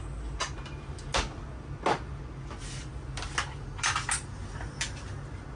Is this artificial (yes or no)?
no